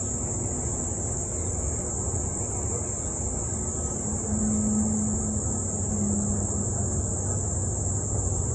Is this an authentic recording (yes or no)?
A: yes